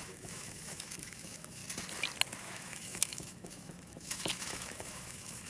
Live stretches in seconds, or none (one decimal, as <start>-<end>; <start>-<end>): 1.6-2.4